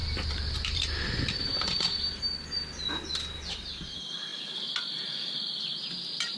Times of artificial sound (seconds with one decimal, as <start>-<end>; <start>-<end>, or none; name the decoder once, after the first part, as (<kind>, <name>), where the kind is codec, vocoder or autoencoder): 0.0-2.2 (vocoder, BigVGAN v2); 4.3-4.9

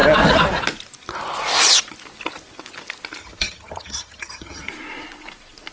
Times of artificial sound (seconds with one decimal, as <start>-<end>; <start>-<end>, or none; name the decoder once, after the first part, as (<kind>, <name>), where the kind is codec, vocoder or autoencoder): 3.2-4.7 (vocoder, HiFi-GAN)

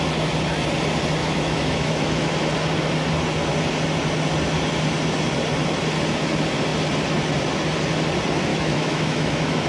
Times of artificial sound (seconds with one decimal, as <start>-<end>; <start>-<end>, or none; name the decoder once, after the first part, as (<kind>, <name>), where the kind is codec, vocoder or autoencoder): 1.2-2.3 (autoencoder, DAC-VAE); 8.5-9.7

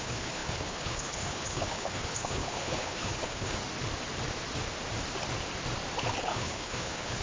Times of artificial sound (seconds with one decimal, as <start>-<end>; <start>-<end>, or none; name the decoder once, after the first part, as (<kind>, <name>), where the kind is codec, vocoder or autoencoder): 0.0-3.6 (codec, HILCodec); 6.2-7.2